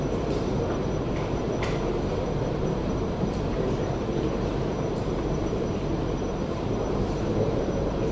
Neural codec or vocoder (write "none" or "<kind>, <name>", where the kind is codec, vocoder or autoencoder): vocoder, BigVGAN v2